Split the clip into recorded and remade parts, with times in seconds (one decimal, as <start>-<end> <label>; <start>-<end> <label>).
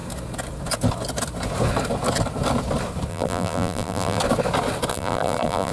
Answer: 0.0-3.1 recorded; 3.1-4.2 remade; 4.2-4.9 recorded; 4.9-5.7 remade